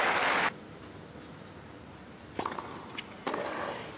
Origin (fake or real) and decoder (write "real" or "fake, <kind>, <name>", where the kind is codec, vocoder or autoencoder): real